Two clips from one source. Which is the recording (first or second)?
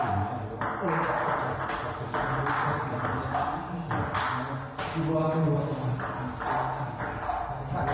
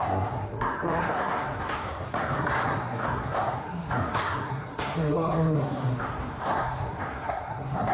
first